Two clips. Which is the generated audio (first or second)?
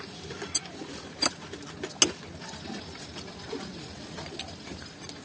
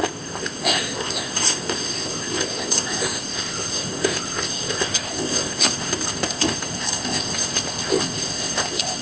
second